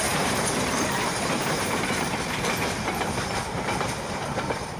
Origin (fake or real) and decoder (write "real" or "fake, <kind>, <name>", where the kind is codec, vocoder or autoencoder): fake, vocoder, BigVGAN v2